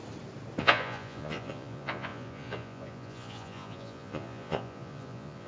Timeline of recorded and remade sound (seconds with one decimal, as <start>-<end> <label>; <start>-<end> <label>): 0.0-0.6 recorded; 0.6-5.5 remade